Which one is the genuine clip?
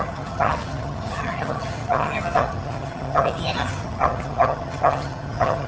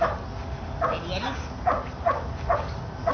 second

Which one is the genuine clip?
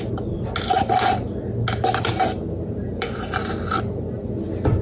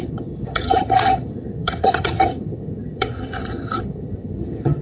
first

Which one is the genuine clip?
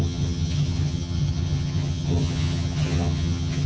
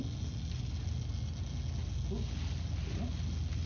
second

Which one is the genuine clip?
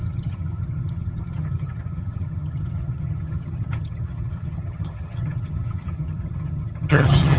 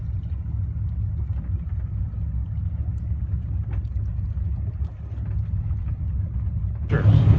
second